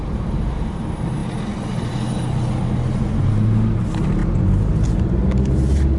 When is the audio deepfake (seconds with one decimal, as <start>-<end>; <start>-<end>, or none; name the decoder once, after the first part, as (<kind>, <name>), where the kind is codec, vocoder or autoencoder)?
none